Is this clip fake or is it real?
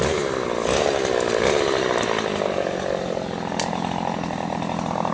real